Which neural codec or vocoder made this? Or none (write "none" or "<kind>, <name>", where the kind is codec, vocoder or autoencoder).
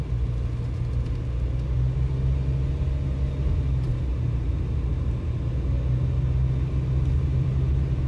none